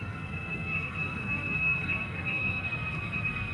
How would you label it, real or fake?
fake